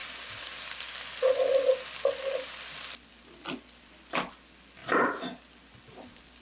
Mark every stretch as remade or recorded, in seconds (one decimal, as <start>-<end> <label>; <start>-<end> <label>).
0.0-1.6 recorded; 1.6-6.4 remade

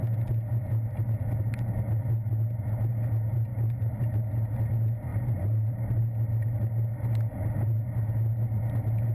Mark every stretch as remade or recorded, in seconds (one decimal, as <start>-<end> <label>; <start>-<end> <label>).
0.0-5.1 recorded; 5.1-6.0 remade; 6.0-9.1 recorded

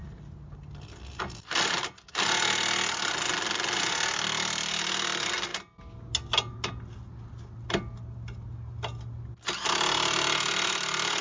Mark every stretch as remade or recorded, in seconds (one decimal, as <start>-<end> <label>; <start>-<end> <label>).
0.0-11.2 recorded

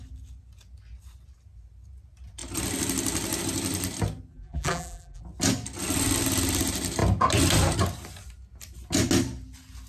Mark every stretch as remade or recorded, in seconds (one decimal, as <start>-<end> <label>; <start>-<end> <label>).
0.0-4.3 recorded; 4.3-5.2 remade; 5.2-9.9 recorded

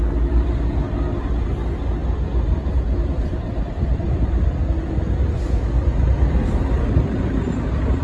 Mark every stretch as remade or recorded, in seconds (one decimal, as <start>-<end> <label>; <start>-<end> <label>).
0.0-8.0 recorded